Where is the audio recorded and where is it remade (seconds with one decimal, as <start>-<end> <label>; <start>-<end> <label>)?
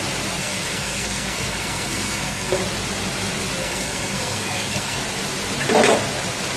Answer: 0.0-0.4 recorded; 0.4-2.6 remade; 2.6-3.6 recorded; 3.6-5.0 remade; 5.0-6.6 recorded